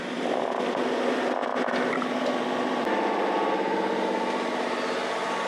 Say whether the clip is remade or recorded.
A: recorded